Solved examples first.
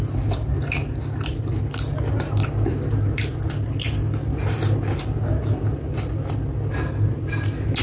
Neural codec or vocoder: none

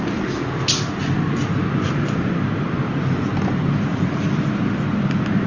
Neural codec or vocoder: none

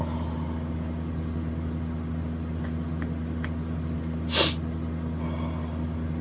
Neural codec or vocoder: none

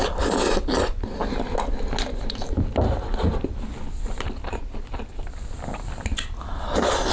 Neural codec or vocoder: none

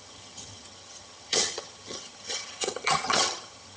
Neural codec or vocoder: vocoder, HiFi-GAN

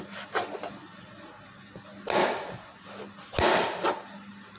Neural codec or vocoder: none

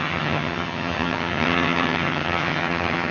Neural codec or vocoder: vocoder, HiFi-GAN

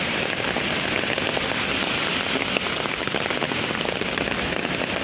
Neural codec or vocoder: none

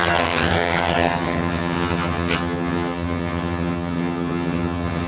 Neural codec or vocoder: vocoder, HiFi-GAN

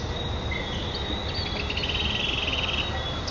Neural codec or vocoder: none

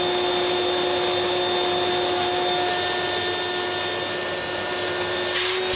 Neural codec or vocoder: none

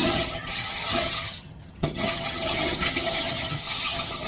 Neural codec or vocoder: vocoder, HiFi-GAN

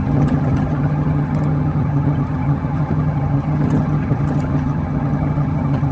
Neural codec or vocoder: vocoder, HiFi-GAN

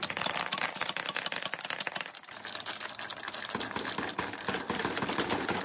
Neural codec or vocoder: none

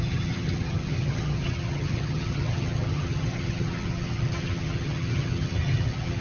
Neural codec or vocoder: vocoder, HiFi-GAN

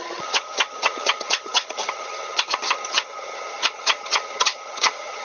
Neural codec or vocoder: vocoder, HiFi-GAN